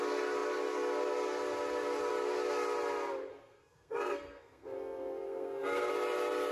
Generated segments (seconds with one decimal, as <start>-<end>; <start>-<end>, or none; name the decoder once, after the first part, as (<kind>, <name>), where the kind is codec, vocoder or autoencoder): 3.3-5.9 (codec, SNAC)